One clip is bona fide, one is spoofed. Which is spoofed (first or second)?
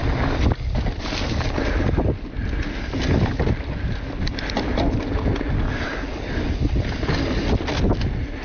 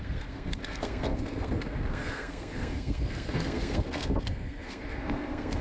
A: second